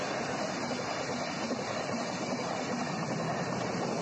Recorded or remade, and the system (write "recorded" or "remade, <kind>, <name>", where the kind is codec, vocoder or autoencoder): recorded